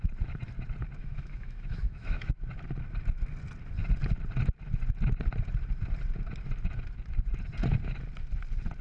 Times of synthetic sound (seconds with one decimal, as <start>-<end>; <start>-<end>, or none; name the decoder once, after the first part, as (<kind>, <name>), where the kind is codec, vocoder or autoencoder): 1.0-2.3 (autoencoder, DAC-VAE)

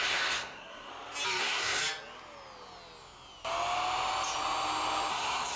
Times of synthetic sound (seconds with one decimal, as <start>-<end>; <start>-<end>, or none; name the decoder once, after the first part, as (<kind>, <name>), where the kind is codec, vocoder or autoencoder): 0.0-0.9 (codec, SNAC); 1.4-1.8; 5.1-5.6

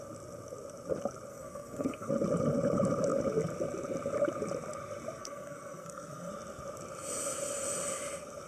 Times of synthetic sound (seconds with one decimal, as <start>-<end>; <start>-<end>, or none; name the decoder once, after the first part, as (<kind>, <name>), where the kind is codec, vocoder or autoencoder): 1.3-2.1 (codec, SNAC); 5.2-6.3

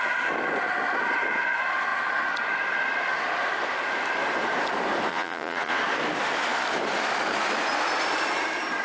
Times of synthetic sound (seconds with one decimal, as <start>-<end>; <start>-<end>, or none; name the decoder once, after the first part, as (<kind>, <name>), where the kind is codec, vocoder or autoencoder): 5.1-5.8 (vocoder, Vocos)

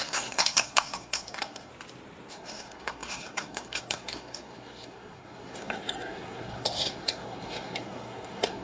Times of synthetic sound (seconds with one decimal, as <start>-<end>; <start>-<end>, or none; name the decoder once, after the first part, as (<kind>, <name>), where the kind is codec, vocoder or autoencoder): 0.0-1.7 (codec, SNAC); 2.3-8.6

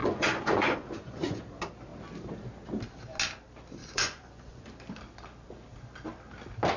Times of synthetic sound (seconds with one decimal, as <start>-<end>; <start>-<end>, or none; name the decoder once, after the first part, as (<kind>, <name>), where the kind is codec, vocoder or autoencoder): 0.0-1.4 (vocoder, Vocos); 3.8-4.7

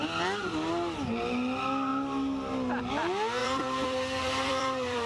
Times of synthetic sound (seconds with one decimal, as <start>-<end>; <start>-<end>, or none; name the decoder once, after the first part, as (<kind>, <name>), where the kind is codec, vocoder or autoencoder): 3.4-5.1 (vocoder, BigVGAN v2)